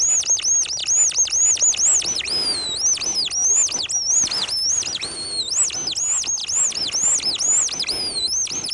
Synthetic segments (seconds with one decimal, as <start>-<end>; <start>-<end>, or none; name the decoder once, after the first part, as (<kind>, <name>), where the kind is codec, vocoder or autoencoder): none